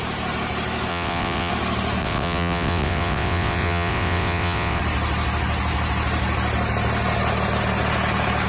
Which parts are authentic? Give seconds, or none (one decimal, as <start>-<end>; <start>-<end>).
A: 0.0-0.9; 1.5-2.0; 4.8-8.5